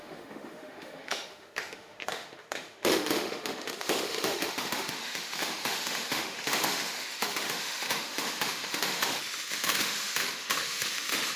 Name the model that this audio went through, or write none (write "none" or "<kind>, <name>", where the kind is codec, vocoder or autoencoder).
autoencoder, DAC-VAE